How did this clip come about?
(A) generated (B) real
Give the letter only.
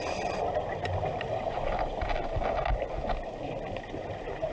B